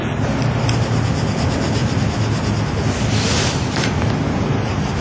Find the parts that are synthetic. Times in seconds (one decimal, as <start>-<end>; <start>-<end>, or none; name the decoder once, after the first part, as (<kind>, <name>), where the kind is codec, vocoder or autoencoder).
none